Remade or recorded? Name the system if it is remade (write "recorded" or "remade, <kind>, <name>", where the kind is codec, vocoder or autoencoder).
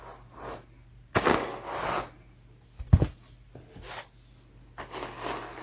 recorded